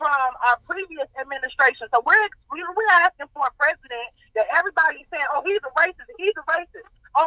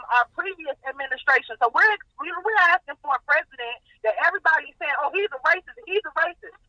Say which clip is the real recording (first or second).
second